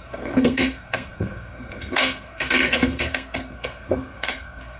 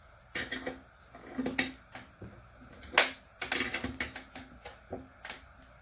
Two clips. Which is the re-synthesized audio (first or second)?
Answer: first